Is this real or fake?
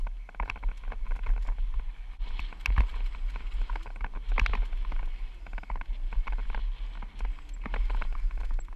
real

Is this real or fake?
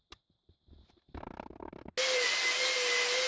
real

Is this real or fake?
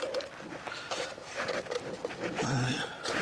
real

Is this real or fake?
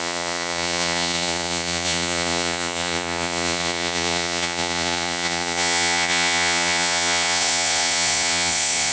fake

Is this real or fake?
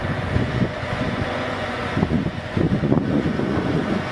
fake